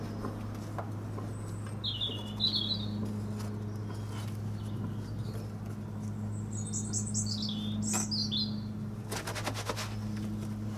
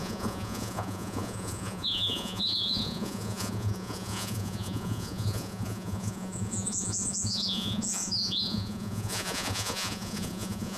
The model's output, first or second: second